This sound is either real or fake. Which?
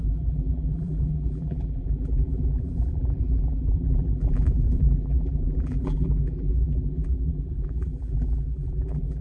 fake